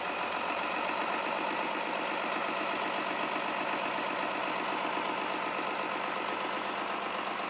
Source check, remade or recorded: recorded